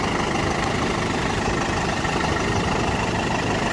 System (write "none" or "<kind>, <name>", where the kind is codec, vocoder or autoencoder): none